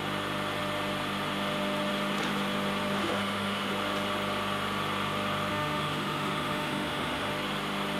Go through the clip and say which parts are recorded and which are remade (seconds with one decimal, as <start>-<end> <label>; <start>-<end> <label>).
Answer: 0.0-3.0 recorded; 3.0-3.7 remade; 3.7-5.5 recorded; 5.5-7.3 remade; 7.3-8.0 recorded